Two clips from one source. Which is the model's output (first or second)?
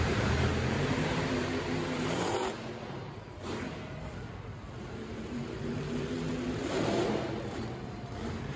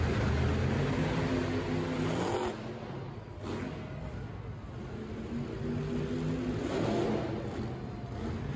first